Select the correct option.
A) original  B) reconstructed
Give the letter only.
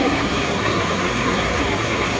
B